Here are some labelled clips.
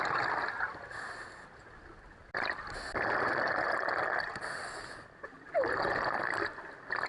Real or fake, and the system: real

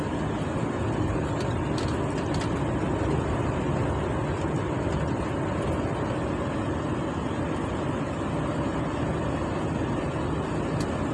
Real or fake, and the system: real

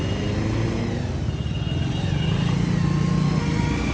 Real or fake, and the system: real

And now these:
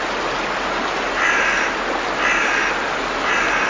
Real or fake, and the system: real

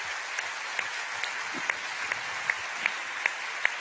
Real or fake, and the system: real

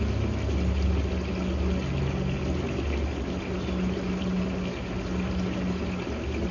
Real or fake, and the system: real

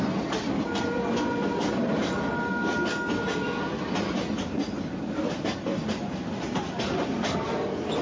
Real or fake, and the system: real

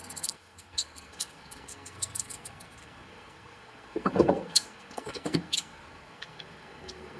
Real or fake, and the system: fake, codec, SNAC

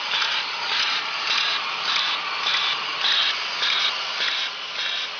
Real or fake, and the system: real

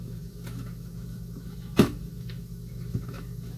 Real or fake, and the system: fake, autoencoder, DAC-VAE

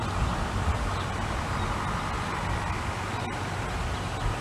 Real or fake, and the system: real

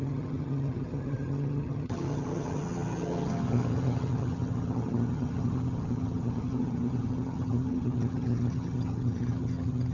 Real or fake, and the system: fake, vocoder, HiFi-GAN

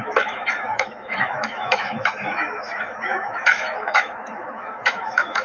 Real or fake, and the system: fake, autoencoder, DAC-VAE